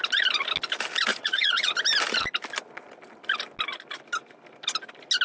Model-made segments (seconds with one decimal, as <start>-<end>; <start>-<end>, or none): 1.1-1.7

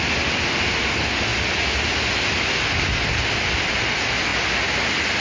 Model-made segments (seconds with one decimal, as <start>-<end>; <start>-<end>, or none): none

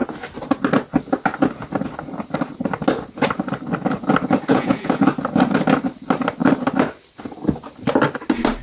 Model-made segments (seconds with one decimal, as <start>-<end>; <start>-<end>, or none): 4.5-5.0

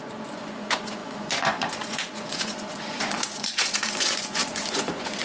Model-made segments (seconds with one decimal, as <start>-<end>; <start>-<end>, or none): 0.0-5.2

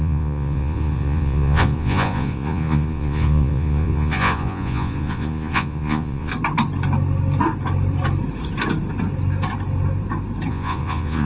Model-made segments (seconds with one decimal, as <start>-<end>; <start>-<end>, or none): 0.0-6.3; 10.5-11.3